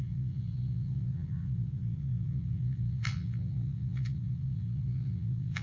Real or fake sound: fake